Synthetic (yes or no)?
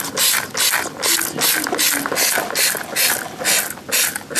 no